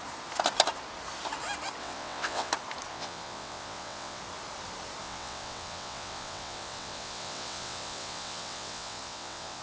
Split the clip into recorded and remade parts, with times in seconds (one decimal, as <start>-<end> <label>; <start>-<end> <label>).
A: 0.0-1.8 recorded; 1.8-2.5 remade; 2.5-2.9 recorded; 2.9-4.2 remade; 4.2-5.0 recorded; 5.0-9.6 remade